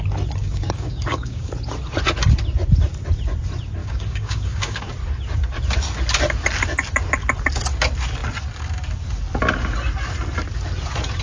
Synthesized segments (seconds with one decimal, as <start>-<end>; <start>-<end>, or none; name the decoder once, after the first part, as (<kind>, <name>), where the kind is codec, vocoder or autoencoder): 0.4-1.5 (codec, DAC); 3.8-4.9